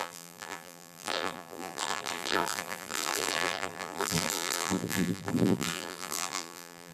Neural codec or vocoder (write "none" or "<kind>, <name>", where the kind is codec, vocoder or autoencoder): vocoder, BigVGAN v2